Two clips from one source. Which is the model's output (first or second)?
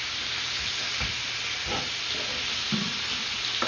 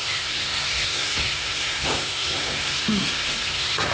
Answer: second